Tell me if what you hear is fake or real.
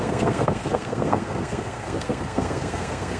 fake